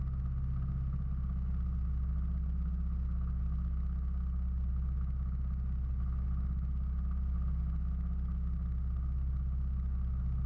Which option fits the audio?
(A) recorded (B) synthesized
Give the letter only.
A